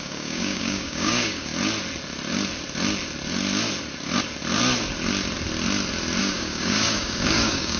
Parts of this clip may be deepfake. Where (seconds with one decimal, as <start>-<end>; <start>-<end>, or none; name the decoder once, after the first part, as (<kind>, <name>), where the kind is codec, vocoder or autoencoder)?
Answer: 0.0-1.5 (codec, DAC); 6.2-7.8